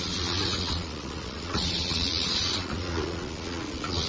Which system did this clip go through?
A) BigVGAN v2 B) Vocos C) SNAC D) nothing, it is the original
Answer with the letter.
B